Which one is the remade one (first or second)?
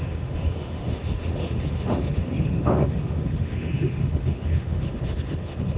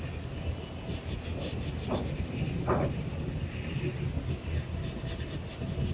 first